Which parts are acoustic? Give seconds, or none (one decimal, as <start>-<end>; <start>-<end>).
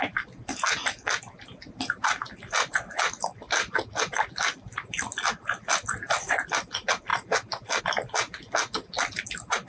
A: 0.0-9.7